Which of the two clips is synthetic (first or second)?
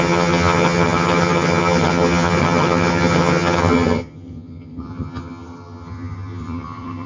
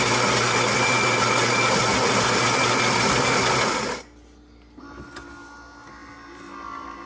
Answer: first